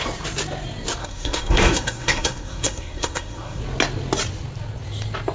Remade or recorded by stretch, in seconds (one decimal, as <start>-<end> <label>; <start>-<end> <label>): 0.0-1.0 recorded; 1.0-3.6 remade; 3.6-5.3 recorded

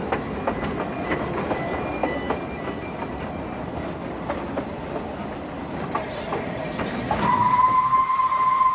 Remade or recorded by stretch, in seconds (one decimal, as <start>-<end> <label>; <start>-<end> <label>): 0.0-8.7 recorded